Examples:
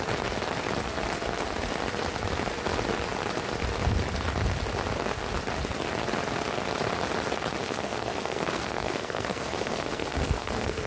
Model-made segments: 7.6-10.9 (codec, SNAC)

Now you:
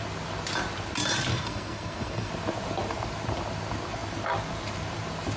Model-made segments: 1.3-2.3 (codec, SNAC)